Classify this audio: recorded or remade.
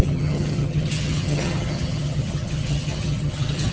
remade